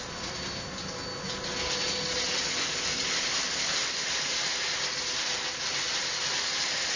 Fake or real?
real